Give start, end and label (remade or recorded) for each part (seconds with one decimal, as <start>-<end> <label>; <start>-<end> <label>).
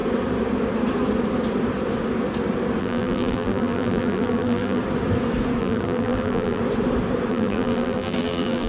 0.0-2.8 recorded; 2.8-4.8 remade; 4.8-5.6 recorded; 5.6-6.6 remade; 6.6-7.3 recorded; 7.3-8.7 remade